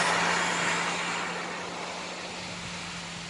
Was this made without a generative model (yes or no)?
yes